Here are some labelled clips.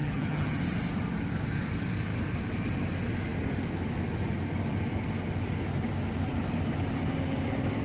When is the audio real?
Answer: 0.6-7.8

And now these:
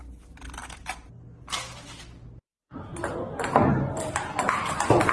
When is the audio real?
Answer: 0.0-5.1